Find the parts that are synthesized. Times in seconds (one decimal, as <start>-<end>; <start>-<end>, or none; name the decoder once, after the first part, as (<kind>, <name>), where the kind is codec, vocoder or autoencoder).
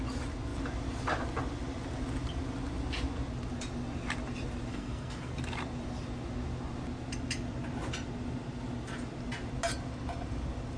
4.7-5.3 (codec, SNAC)